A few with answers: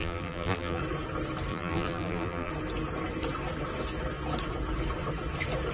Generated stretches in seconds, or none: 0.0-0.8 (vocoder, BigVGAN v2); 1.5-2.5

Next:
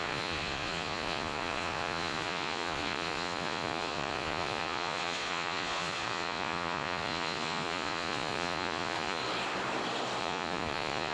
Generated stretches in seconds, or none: 0.0-9.2 (vocoder, Vocos); 10.2-11.1